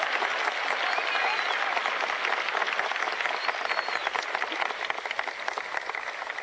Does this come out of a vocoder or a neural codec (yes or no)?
no